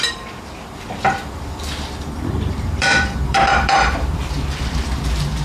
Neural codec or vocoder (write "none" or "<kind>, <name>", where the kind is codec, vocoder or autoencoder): vocoder, BigVGAN v2